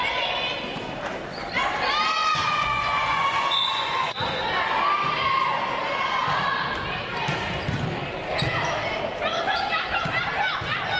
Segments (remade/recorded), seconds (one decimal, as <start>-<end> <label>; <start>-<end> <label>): 0.0-2.2 recorded; 2.2-4.4 remade; 4.4-11.0 recorded